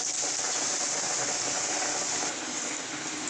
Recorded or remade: recorded